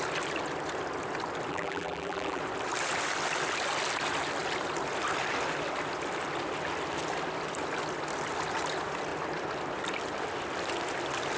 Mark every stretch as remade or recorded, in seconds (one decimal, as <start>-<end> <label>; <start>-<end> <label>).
0.0-1.5 recorded; 1.5-2.4 remade; 2.4-11.4 recorded